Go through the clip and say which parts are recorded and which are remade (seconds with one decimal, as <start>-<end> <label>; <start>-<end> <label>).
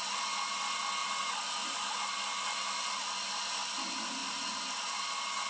0.0-1.0 recorded; 1.0-2.9 remade; 2.9-5.5 recorded